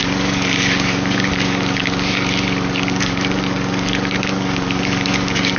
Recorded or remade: remade